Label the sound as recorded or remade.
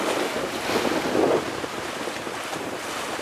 recorded